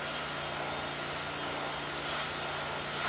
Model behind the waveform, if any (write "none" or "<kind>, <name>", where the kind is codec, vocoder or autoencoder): none